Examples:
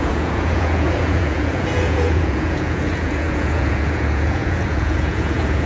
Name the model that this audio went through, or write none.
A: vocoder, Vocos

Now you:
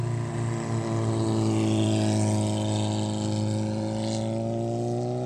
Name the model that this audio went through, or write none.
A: none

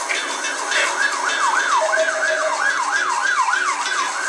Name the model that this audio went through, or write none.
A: none